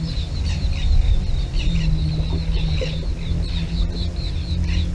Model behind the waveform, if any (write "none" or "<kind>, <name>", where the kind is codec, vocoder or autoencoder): none